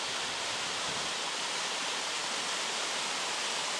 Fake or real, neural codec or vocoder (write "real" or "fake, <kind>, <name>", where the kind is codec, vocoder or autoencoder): real